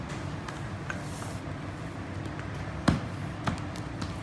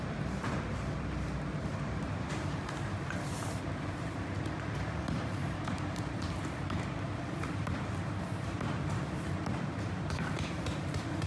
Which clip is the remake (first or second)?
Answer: second